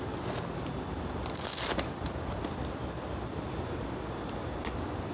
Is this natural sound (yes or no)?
yes